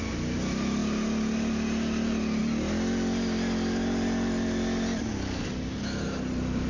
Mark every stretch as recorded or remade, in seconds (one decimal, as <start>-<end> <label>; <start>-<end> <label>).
0.0-6.7 recorded